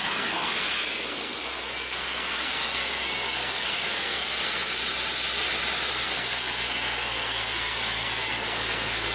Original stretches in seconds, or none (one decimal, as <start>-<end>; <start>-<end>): 4.8-5.9